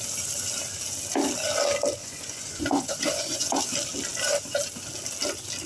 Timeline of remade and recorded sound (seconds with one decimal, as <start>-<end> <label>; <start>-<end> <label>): 0.0-2.0 recorded; 2.0-3.6 remade; 3.6-5.7 recorded